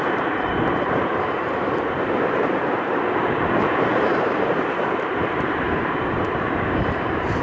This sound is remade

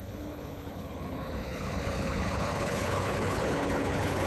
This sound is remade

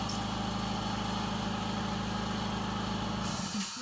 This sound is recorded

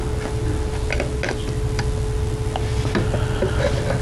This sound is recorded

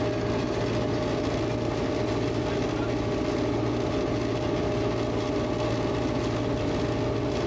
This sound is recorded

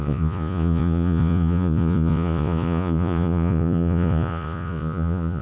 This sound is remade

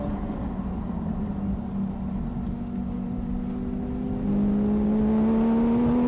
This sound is recorded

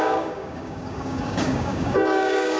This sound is remade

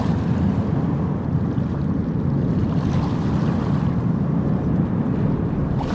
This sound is recorded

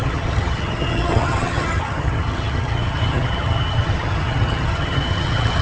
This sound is remade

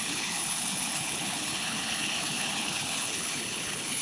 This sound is remade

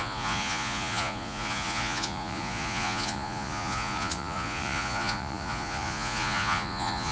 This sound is remade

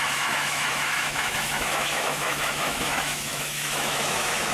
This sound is remade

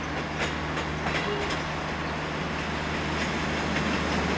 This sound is recorded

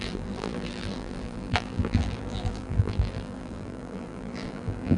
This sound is remade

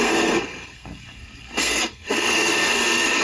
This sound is remade